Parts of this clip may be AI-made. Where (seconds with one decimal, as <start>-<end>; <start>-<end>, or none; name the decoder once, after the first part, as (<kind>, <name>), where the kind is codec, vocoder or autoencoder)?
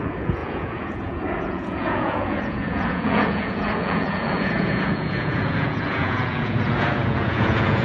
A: 0.0-7.8 (vocoder, Vocos)